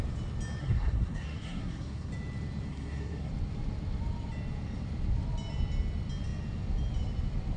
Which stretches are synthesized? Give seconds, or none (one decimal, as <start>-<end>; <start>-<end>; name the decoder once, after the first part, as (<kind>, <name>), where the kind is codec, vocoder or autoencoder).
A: 0.6-2.1 (codec, SNAC); 2.7-3.3